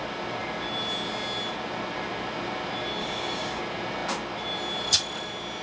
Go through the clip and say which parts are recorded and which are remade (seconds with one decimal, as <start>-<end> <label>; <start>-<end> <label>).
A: 0.0-3.0 recorded; 3.0-3.6 remade; 3.6-5.6 recorded